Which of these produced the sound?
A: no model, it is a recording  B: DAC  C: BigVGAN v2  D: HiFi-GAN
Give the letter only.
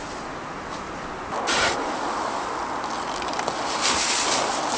A